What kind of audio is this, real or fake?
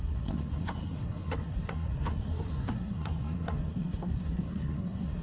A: fake